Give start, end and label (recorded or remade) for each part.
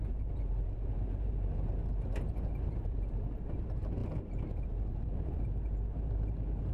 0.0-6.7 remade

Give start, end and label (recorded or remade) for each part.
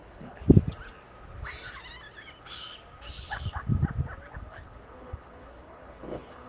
0.0-0.4 remade; 0.4-3.3 recorded; 3.3-3.7 remade; 3.7-4.3 recorded; 4.3-6.5 remade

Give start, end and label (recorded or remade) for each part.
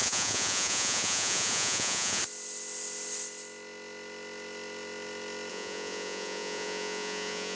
0.0-2.2 remade; 2.2-5.5 recorded; 5.5-7.5 remade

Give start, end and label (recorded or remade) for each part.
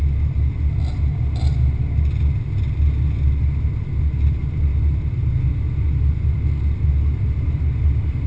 0.0-8.3 recorded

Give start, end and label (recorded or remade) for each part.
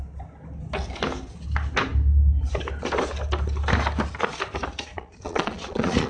0.0-4.9 recorded; 4.9-6.1 remade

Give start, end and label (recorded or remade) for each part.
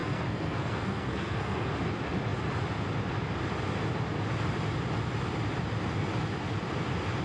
0.0-1.7 remade; 1.7-7.2 recorded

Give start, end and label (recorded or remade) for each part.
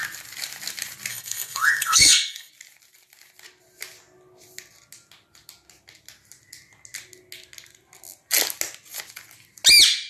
0.0-1.1 recorded; 1.1-2.5 remade; 2.5-10.1 recorded